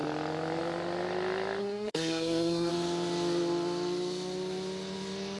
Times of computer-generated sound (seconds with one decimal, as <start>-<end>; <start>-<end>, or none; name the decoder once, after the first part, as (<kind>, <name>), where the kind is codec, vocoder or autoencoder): 1.6-2.7 (codec, SNAC)